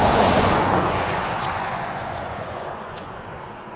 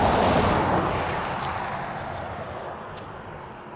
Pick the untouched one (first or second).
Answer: second